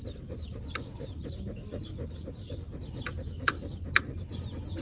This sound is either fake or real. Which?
real